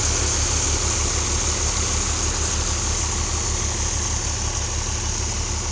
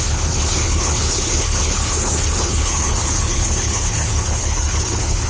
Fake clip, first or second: second